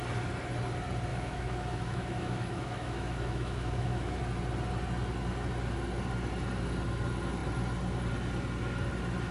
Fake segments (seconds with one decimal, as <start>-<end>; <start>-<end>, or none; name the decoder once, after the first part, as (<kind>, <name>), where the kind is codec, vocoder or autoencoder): 1.1-4.2 (autoencoder, DAC-VAE)